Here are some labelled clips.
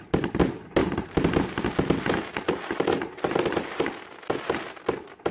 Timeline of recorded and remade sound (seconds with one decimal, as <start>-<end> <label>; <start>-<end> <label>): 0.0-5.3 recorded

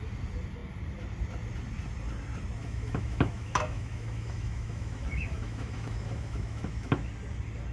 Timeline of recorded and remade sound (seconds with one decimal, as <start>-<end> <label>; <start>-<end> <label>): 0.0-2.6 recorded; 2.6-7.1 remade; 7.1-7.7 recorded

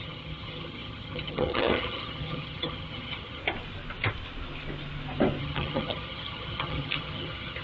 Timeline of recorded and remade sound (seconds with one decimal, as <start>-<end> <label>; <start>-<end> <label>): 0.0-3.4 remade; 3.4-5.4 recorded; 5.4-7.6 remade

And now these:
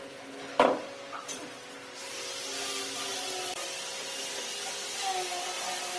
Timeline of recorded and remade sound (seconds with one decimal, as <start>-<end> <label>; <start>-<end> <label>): 0.0-0.6 remade; 0.6-6.0 recorded